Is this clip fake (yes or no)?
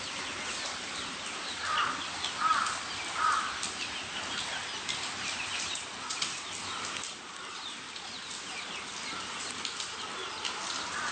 no